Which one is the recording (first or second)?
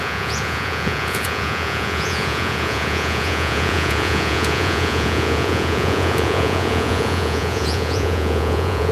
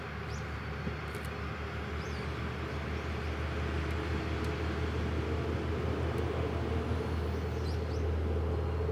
second